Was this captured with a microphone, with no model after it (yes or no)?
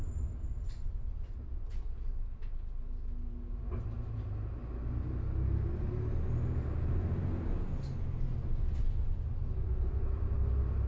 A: yes